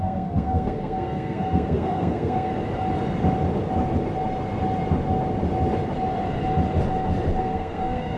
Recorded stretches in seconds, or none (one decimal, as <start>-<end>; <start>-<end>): 2.5-7.4